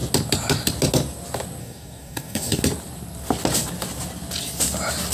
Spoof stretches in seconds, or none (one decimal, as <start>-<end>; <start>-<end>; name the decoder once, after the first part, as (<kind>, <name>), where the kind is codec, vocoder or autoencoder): 1.6-2.6 (codec, DAC)